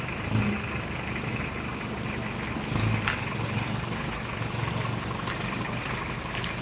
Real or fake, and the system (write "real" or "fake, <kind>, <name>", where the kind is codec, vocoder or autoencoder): real